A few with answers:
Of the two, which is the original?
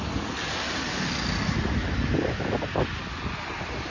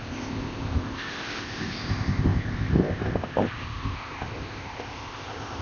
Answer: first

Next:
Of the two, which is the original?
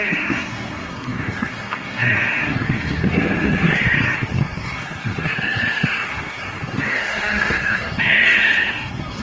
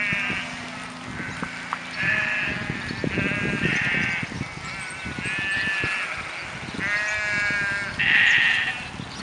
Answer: second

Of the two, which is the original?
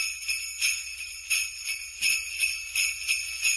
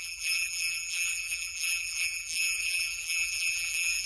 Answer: first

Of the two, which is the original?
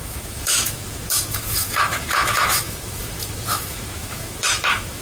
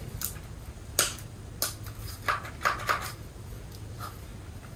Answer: second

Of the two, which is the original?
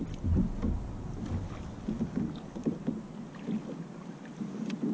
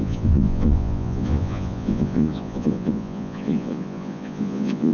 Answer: first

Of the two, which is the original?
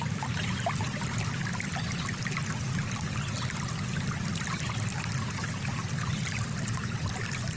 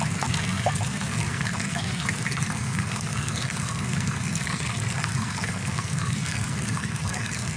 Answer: first